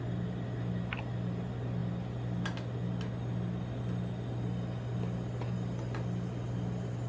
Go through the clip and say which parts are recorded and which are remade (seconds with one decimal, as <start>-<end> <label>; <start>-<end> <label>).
0.0-7.1 recorded